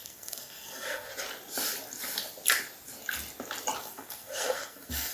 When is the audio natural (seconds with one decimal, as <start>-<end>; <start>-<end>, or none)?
1.1-3.8